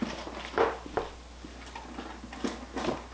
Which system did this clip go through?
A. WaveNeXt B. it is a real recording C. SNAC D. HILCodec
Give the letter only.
B